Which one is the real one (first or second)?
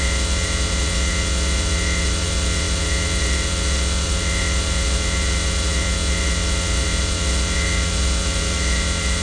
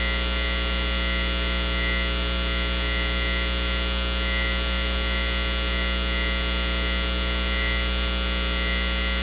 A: second